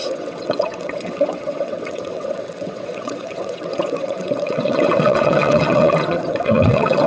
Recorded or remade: remade